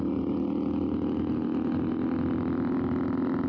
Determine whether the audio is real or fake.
real